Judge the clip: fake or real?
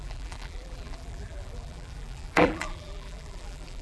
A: fake